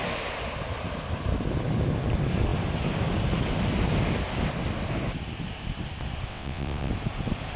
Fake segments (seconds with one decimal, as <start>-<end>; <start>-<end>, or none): 6.3-6.9